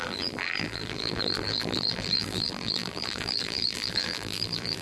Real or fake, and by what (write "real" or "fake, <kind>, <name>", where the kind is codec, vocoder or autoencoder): fake, vocoder, BigVGAN v2